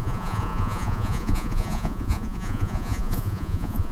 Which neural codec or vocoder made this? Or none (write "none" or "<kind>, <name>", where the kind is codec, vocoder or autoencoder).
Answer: vocoder, Vocos